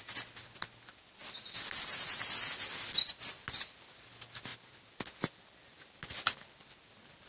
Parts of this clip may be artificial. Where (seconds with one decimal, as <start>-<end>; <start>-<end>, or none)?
none